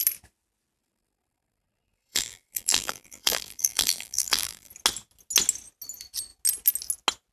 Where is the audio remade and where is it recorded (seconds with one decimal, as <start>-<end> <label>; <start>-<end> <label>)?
0.0-0.8 recorded; 0.8-4.7 remade; 4.7-7.3 recorded